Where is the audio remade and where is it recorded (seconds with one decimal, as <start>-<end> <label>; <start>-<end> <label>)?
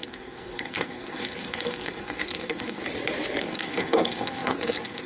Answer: 0.0-2.8 remade; 2.8-3.4 recorded; 3.4-5.1 remade